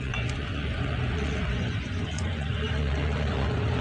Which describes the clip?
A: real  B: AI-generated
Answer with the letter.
B